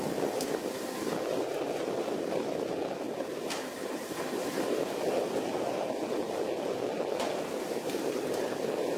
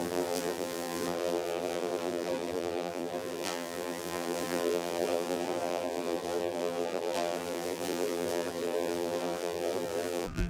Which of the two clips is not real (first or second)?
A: second